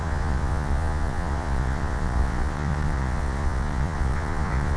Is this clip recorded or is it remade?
remade